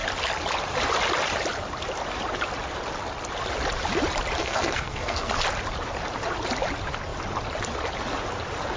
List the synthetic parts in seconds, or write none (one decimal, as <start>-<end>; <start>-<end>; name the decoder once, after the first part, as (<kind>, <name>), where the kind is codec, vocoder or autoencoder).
4.4-5.3 (codec, SNAC)